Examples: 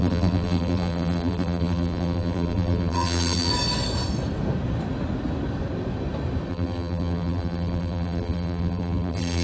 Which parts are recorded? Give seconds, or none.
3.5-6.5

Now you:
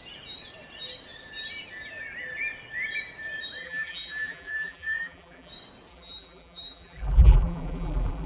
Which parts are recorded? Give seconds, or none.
0.0-3.6; 5.5-5.9

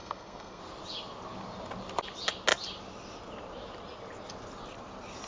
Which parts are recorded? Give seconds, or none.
0.6-5.3

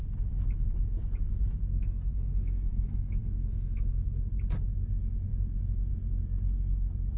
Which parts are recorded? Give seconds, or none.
0.0-1.7; 4.2-7.2

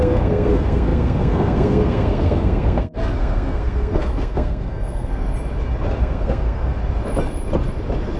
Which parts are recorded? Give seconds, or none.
5.3-6.0; 6.8-8.2

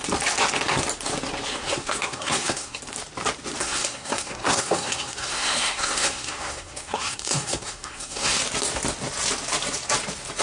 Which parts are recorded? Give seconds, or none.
0.0-1.5; 2.8-3.6; 8.4-10.4